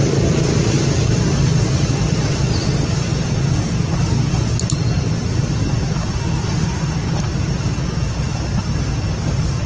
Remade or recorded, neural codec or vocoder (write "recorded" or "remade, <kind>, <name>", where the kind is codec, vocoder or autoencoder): recorded